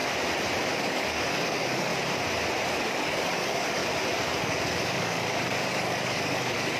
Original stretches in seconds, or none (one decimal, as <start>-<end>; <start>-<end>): 0.0-0.8; 1.9-2.6; 3.8-4.4